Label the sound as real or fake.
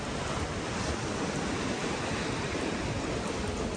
real